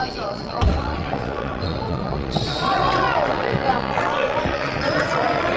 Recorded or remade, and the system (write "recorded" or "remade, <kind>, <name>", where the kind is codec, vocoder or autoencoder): remade, vocoder, WaveNeXt